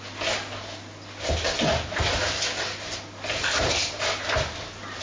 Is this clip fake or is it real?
real